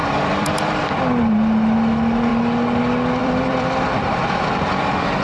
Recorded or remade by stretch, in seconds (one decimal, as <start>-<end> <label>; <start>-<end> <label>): 0.0-1.3 remade; 1.3-3.2 recorded; 3.2-4.2 remade; 4.2-5.2 recorded